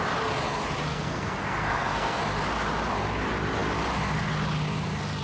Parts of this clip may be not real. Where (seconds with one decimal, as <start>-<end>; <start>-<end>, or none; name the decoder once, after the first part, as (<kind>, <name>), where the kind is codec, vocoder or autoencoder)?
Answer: 0.9-2.2 (codec, SNAC)